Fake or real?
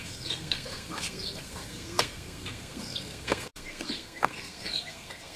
fake